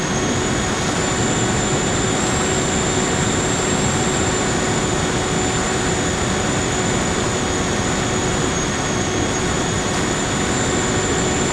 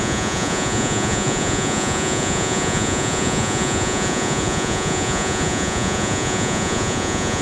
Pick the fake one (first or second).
second